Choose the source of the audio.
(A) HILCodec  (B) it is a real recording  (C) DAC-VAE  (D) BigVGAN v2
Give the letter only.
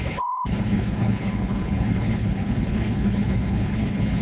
A